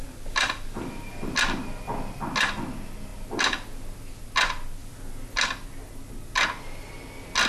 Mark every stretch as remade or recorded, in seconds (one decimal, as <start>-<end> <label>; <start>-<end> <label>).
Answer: 0.0-7.5 recorded